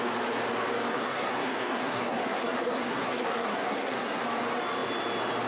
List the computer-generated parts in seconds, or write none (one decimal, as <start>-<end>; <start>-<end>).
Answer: 0.9-4.2